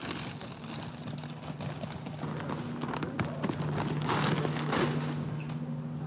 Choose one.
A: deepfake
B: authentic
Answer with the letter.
B